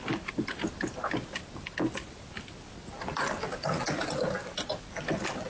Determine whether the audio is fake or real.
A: real